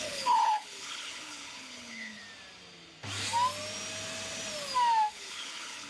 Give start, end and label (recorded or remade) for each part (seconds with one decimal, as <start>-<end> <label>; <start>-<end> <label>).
0.0-2.2 remade; 2.2-5.1 recorded; 5.1-5.9 remade